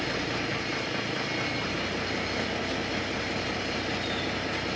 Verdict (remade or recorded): recorded